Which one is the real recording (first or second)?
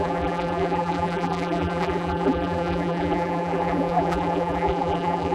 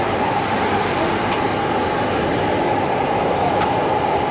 second